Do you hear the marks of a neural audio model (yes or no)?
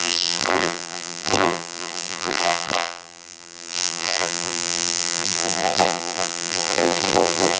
yes